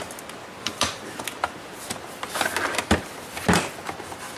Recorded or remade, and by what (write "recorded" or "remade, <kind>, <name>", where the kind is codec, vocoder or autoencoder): recorded